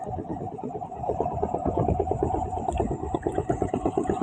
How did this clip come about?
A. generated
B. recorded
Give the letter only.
A